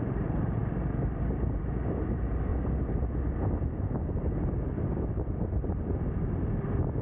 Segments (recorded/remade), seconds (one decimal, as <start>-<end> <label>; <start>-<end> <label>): 0.0-0.6 remade; 0.6-1.9 recorded; 1.9-2.5 remade; 2.5-7.0 recorded